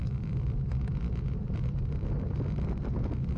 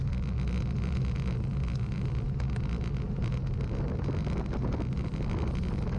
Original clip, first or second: second